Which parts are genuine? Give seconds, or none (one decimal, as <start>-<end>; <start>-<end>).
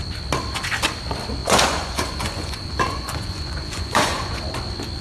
0.0-1.4; 4.4-5.0